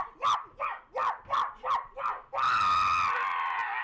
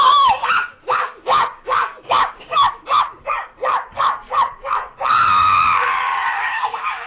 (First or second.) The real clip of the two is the first